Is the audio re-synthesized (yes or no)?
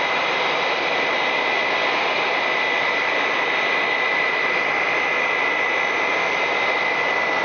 no